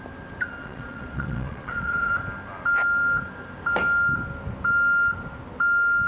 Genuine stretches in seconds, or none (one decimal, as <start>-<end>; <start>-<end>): 0.0-0.6; 2.1-6.1